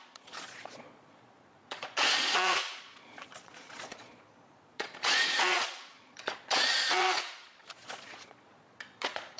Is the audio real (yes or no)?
no